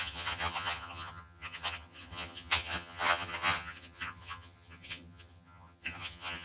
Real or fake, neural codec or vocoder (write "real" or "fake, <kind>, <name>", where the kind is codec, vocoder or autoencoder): fake, vocoder, HiFi-GAN